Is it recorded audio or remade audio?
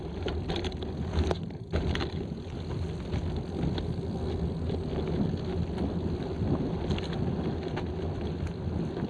recorded